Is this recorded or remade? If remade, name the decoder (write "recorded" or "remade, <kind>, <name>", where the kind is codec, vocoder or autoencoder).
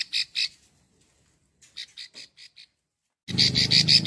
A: recorded